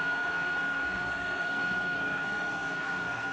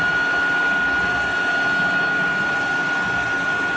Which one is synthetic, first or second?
first